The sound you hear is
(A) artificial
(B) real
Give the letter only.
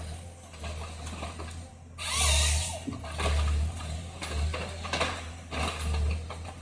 B